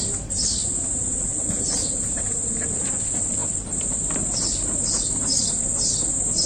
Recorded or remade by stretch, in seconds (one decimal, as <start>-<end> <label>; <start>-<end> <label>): 0.0-6.5 remade